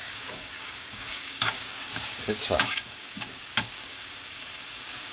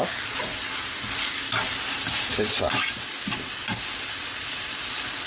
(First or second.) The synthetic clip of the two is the first